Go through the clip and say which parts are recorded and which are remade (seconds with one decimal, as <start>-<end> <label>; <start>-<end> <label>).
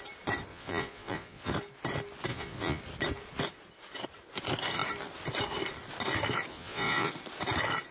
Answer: 0.0-0.5 recorded; 0.5-1.5 remade; 1.5-2.3 recorded; 2.3-2.8 remade; 2.8-6.5 recorded; 6.5-7.1 remade; 7.1-7.9 recorded